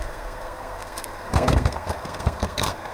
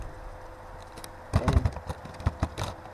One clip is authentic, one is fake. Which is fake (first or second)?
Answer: first